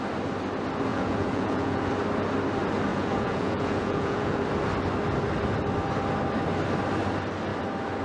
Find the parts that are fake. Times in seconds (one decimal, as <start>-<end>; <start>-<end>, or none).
0.9-1.9; 2.9-4.4